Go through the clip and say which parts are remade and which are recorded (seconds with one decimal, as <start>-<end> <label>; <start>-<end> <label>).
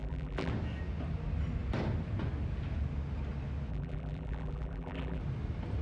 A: 0.0-0.5 remade; 0.5-3.7 recorded; 3.7-5.2 remade; 5.2-5.8 recorded